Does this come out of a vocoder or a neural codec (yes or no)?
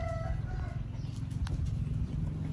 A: no